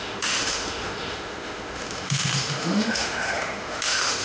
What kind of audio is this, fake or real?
fake